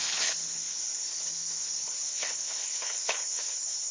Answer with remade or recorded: remade